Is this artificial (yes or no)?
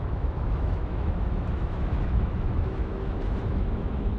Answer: yes